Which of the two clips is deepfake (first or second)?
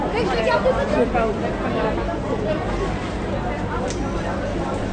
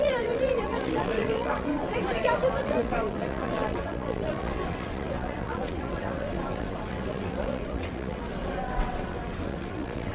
second